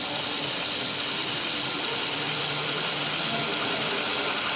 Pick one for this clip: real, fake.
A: real